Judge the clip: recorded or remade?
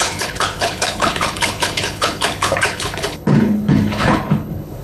remade